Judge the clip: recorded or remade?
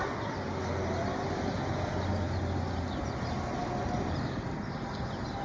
recorded